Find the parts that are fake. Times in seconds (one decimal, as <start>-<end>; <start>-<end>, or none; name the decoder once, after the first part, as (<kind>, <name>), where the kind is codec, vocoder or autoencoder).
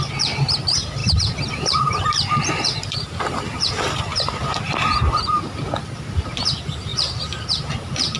0.0-8.2 (vocoder, BigVGAN v2)